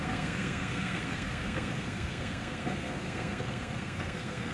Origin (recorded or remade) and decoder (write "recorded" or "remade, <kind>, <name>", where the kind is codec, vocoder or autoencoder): remade, codec, SNAC